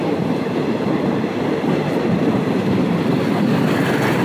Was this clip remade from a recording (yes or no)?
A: yes